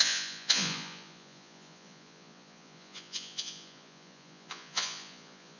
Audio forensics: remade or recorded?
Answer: remade